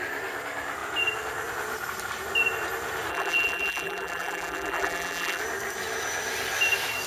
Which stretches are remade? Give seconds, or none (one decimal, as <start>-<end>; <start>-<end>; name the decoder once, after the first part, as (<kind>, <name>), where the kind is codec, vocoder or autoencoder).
3.1-5.4 (vocoder, BigVGAN v2)